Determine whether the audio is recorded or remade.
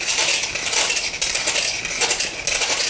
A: recorded